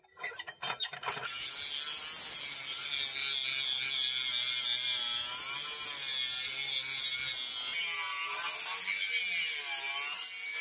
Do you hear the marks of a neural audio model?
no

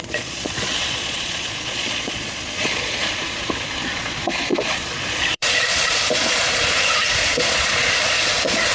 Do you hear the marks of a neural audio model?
yes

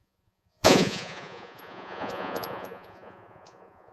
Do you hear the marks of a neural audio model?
yes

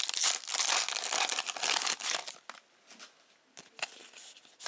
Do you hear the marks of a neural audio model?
no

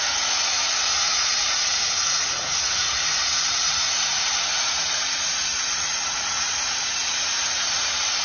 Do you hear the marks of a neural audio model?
yes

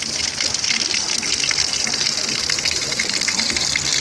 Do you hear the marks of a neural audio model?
no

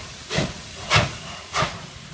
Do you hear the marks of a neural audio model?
yes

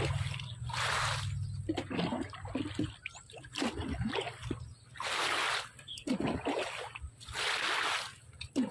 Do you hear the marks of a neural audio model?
no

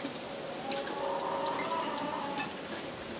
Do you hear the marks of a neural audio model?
no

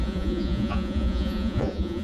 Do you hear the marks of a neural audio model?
yes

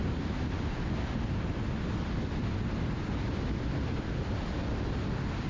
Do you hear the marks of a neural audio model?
no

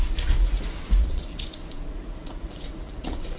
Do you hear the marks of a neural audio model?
yes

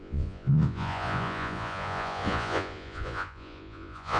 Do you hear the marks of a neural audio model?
yes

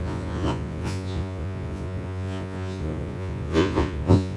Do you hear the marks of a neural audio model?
yes